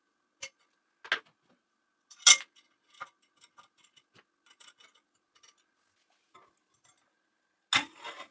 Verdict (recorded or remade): recorded